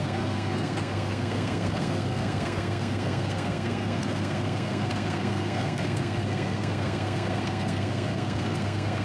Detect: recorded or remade remade